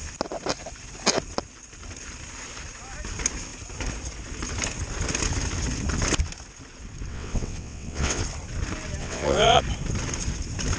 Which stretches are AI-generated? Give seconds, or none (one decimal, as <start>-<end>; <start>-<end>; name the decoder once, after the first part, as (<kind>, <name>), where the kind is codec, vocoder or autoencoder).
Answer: 7.1-8.2 (vocoder, WaveNeXt); 9.0-9.6